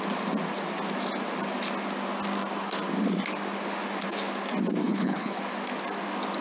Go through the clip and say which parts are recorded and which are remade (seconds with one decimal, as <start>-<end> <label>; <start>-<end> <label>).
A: 0.0-4.8 recorded; 4.8-5.4 remade; 5.4-6.4 recorded